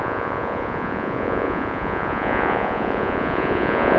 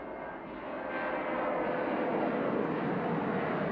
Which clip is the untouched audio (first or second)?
second